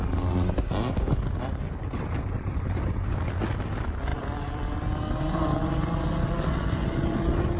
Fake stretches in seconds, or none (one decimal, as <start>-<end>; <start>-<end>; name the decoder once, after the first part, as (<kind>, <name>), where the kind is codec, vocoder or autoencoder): 4.1-4.9 (vocoder, BigVGAN v2)